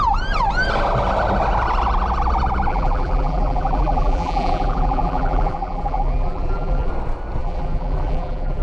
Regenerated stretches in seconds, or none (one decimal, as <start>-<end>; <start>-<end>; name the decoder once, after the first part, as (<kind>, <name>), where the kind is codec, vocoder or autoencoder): 2.7-6.9 (vocoder, BigVGAN v2); 7.4-8.6